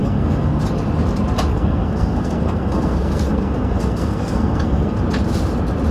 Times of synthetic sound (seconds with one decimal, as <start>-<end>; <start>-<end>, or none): 0.0-0.6; 1.5-5.0